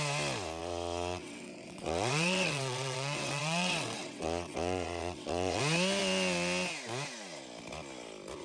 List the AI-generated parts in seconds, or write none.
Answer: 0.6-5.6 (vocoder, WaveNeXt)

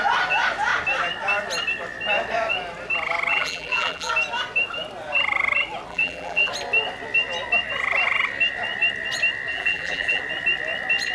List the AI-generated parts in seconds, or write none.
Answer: 3.3-4.1 (vocoder, BigVGAN v2); 5.9-6.5; 9.5-10.2

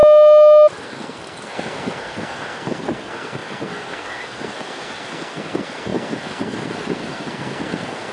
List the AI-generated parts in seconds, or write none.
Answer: 0.8-8.1 (codec, SNAC)